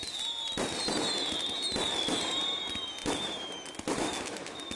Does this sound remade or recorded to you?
recorded